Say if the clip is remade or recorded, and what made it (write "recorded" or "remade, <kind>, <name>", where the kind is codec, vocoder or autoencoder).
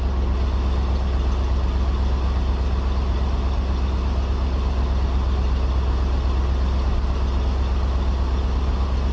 recorded